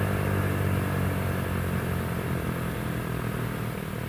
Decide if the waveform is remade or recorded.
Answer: recorded